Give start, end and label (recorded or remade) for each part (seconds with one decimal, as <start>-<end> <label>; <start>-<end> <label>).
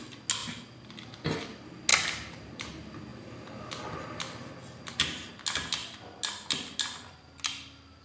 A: 0.0-0.4 recorded; 0.4-1.4 remade; 1.4-1.9 recorded; 1.9-2.5 remade; 2.5-3.1 recorded; 3.1-4.5 remade; 4.5-8.0 recorded